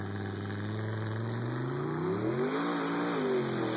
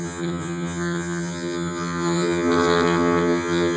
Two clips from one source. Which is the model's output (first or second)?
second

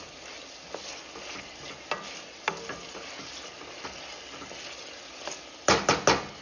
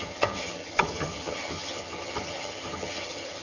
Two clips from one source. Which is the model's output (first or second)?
second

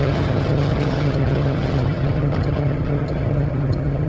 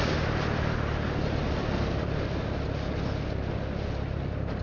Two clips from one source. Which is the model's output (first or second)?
first